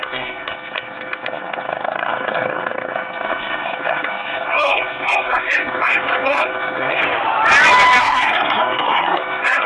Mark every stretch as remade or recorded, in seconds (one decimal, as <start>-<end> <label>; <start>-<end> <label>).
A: 0.0-7.0 remade; 7.0-8.0 recorded; 8.0-9.7 remade